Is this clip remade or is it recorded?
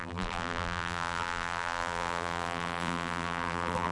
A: remade